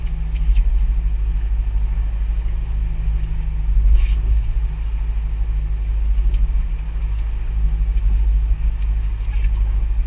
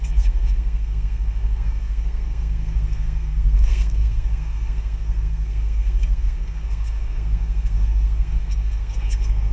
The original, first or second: first